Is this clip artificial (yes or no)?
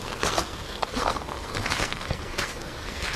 yes